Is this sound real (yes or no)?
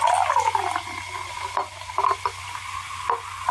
yes